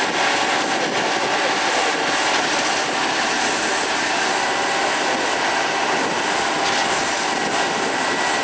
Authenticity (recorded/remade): recorded